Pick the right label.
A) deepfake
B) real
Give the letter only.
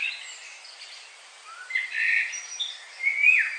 B